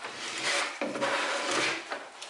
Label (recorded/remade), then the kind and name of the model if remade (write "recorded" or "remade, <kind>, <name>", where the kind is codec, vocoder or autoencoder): remade, vocoder, BigVGAN v2